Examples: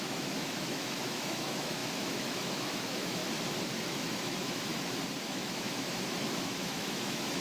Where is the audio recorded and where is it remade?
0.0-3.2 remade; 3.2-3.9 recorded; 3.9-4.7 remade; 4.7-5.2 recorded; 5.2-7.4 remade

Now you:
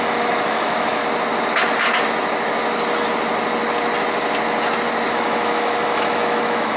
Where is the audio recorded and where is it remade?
0.0-1.0 remade; 1.0-5.1 recorded; 5.1-6.8 remade

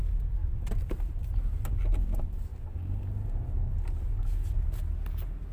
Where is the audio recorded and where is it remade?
0.0-5.5 recorded

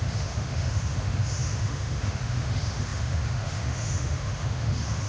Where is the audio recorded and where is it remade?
0.0-5.1 remade

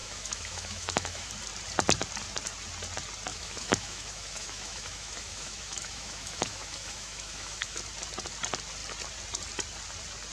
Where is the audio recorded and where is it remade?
0.0-1.3 remade; 1.3-3.3 recorded; 3.3-7.8 remade; 7.8-10.3 recorded